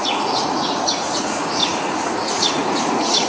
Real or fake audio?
fake